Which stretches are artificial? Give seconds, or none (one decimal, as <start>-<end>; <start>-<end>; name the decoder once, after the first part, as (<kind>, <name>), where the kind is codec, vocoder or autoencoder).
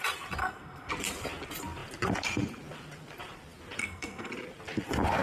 0.4-0.9 (codec, SNAC); 3.8-4.3